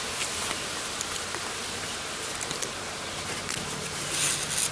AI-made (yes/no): no